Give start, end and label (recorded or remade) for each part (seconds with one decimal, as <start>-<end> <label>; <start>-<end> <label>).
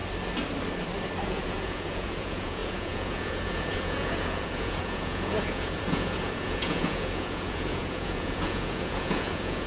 0.0-1.2 recorded; 1.2-9.7 remade